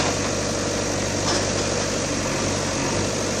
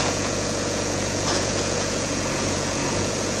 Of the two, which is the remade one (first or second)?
second